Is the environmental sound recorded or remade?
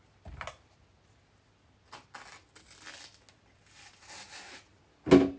recorded